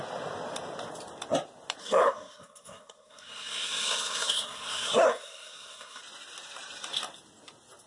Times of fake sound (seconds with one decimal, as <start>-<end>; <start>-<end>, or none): 1.8-6.0